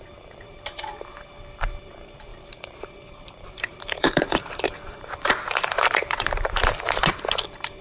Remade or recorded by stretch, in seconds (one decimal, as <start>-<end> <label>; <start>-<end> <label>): 0.0-2.3 recorded; 2.3-7.0 remade; 7.0-7.8 recorded